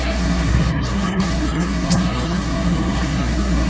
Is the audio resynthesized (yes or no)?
yes